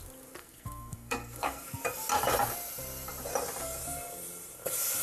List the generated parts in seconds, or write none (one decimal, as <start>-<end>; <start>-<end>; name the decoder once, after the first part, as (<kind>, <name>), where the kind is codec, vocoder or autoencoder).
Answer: 0.4-1.8 (codec, SNAC)